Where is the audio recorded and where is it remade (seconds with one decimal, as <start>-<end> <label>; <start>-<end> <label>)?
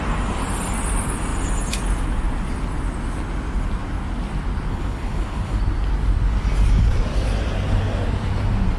0.0-4.7 recorded; 4.7-5.6 remade; 5.6-8.8 recorded